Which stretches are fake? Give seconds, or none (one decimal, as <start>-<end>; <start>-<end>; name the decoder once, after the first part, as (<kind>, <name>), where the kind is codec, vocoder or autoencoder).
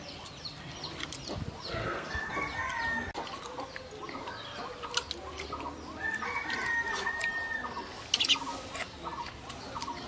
1.8-2.3 (codec, SNAC)